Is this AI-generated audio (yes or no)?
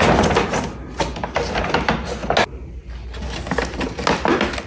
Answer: no